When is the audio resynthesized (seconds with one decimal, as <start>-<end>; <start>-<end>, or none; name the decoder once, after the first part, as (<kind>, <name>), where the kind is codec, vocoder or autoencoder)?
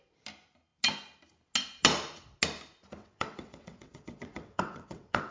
3.0-5.3 (vocoder, WaveNeXt)